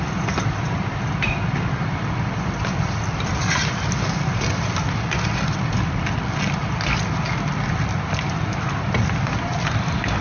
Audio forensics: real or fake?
real